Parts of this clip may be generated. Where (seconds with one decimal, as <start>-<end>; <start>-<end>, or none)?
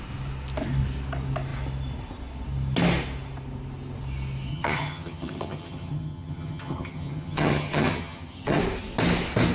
4.5-8.6